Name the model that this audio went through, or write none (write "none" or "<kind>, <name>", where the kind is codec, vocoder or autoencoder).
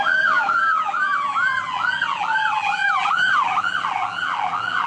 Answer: vocoder, BigVGAN v2